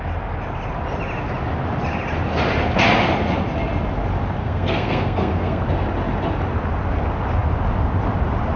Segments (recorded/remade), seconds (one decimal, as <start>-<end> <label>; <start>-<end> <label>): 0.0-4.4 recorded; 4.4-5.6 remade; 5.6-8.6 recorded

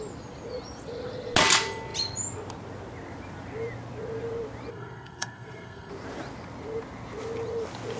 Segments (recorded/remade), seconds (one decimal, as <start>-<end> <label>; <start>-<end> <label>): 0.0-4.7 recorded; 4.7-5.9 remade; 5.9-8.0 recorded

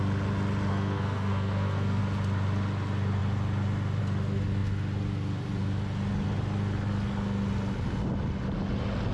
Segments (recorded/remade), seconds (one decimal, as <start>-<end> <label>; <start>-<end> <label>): 0.0-0.7 recorded; 0.7-2.0 remade; 2.0-9.1 recorded

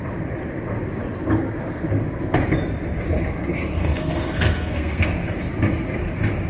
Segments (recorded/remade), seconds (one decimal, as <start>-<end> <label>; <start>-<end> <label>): 0.0-3.8 recorded; 3.8-5.0 remade; 5.0-6.5 recorded

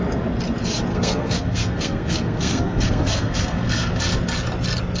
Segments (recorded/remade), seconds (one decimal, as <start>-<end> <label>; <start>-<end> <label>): 0.0-0.9 recorded; 0.9-3.9 remade; 3.9-5.0 recorded

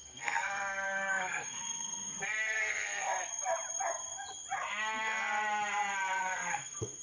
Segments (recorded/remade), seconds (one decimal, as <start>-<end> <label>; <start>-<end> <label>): 0.0-2.1 remade; 2.1-2.6 recorded; 2.6-3.1 remade; 3.1-6.2 recorded; 6.2-7.0 remade

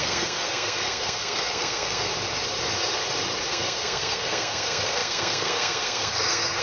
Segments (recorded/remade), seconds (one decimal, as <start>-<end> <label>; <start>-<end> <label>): 0.0-2.1 remade; 2.1-3.5 recorded; 3.5-6.6 remade